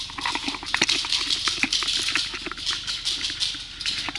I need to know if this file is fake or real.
real